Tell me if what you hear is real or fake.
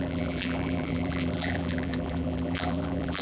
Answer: fake